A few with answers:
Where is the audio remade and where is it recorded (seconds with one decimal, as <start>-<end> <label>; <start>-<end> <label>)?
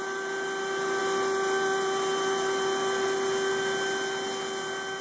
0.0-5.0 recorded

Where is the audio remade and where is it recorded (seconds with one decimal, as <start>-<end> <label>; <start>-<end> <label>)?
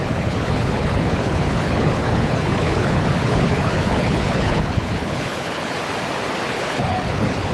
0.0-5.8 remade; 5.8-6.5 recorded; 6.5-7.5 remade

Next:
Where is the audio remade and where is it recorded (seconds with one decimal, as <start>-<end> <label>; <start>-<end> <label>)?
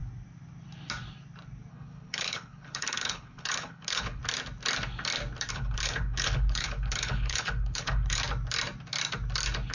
0.0-1.7 recorded; 1.7-4.2 remade; 4.2-5.5 recorded; 5.5-8.2 remade; 8.2-9.7 recorded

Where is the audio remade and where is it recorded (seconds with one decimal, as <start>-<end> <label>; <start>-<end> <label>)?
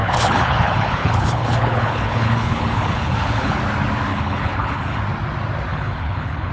0.0-3.6 remade; 3.6-4.1 recorded; 4.1-5.0 remade; 5.0-5.7 recorded; 5.7-6.5 remade